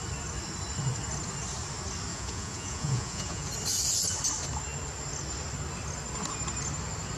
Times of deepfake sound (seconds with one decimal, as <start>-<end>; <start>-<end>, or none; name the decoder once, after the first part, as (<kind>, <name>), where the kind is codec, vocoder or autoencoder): 2.1-3.5 (vocoder, Vocos)